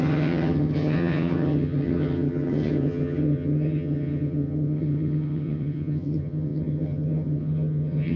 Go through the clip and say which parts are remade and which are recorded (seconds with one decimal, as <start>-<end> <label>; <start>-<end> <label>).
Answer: 0.0-8.2 remade